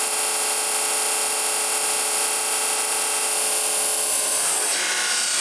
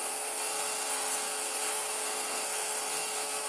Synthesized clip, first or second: second